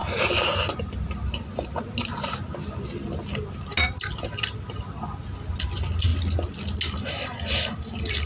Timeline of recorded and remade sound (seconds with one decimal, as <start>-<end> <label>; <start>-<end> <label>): 0.0-8.3 recorded

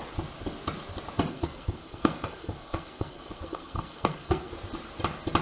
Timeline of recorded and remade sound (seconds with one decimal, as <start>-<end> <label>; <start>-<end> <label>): 0.0-1.3 recorded; 1.3-4.5 remade; 4.5-5.4 recorded